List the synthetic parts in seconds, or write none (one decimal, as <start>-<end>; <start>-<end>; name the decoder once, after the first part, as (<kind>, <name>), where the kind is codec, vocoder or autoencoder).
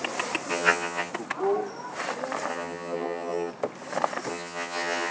0.5-1.1 (vocoder, HiFi-GAN); 2.5-3.5; 4.3-5.1